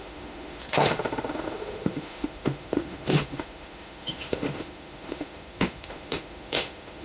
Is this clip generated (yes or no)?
yes